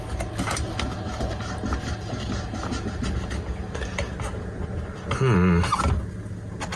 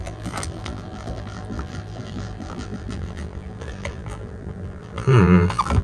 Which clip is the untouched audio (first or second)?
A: first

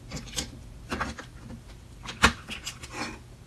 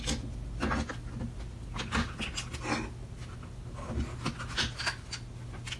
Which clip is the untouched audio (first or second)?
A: second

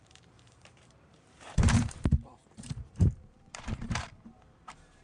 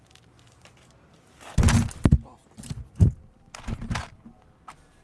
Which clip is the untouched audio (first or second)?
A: second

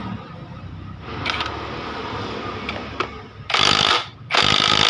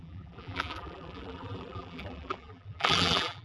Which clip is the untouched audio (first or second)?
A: first